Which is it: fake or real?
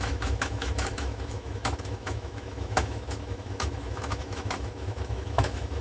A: fake